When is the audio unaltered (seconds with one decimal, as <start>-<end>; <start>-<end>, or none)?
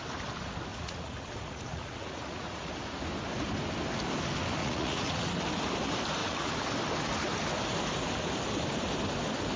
0.0-0.7; 2.7-4.6; 5.3-6.2; 6.7-9.6